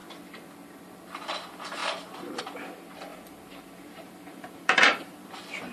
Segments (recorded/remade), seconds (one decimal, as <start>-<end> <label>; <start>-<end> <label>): 0.0-3.1 recorded; 3.1-5.3 remade; 5.3-5.7 recorded